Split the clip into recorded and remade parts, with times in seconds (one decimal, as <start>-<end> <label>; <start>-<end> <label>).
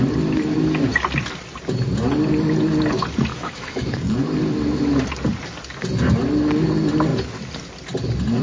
0.0-3.3 recorded; 3.3-4.2 remade; 4.2-8.4 recorded